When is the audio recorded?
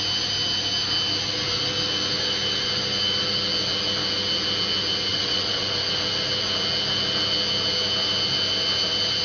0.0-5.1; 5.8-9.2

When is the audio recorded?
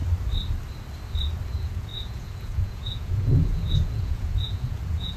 0.0-1.5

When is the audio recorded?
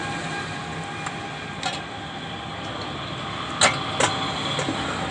0.0-5.1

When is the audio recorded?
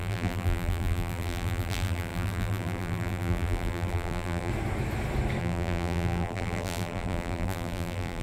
4.5-5.4